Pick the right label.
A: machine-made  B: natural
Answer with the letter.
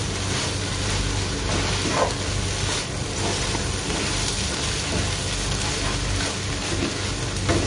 B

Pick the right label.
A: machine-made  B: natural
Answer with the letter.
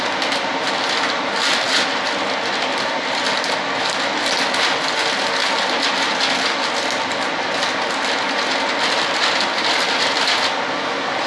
B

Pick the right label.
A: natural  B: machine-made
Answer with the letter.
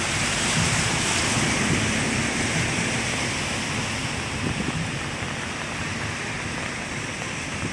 A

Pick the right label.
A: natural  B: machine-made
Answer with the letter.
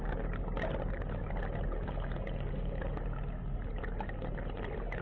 A